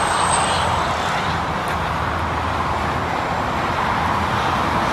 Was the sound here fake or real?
real